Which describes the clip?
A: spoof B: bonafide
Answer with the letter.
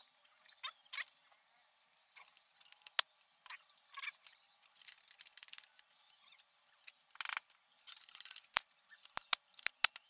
B